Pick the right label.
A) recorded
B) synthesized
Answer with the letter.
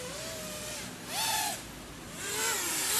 A